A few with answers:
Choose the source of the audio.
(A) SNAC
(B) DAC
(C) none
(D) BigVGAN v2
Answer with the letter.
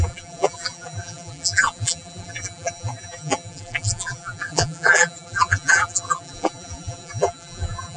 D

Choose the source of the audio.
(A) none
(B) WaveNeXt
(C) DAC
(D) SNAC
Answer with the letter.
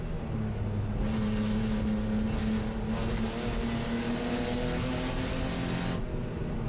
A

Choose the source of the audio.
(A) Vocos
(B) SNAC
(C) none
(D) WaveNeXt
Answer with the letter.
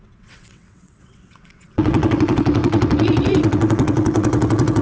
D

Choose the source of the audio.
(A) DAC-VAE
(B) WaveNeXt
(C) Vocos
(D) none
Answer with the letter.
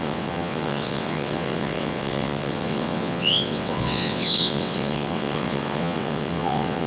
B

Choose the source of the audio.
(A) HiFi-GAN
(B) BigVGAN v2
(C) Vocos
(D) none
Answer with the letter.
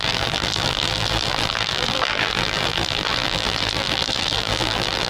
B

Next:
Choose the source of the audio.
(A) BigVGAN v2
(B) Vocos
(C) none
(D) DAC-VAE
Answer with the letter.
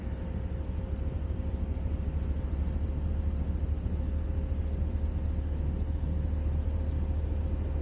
C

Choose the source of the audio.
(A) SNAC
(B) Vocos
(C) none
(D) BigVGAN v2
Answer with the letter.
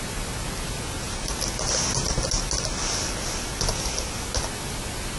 C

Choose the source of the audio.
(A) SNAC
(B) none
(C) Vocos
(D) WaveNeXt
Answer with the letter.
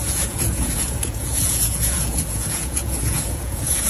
C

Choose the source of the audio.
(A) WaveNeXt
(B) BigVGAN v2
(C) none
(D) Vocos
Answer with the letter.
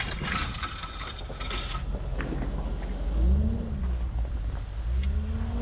C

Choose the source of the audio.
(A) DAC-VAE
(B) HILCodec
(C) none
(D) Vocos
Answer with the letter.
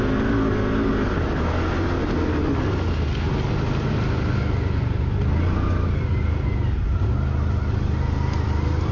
C